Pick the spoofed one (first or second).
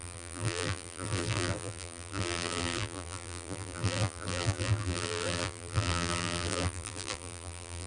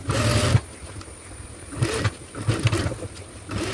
first